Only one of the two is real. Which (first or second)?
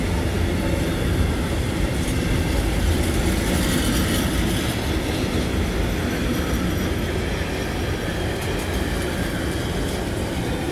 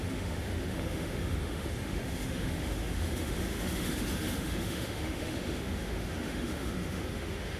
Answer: first